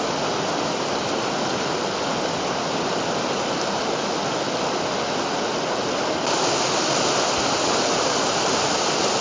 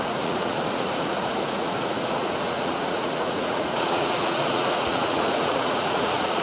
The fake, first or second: second